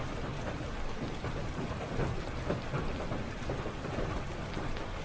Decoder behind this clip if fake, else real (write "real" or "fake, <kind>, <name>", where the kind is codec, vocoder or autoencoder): real